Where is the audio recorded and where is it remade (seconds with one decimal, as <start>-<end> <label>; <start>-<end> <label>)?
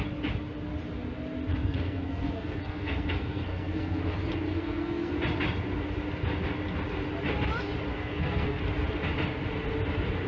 0.0-1.5 recorded; 1.5-4.0 remade; 4.0-4.5 recorded; 4.5-5.1 remade; 5.1-7.9 recorded; 7.9-8.6 remade; 8.6-10.3 recorded